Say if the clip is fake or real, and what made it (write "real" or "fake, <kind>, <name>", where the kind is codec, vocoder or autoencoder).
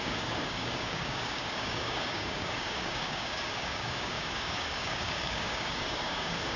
fake, codec, DAC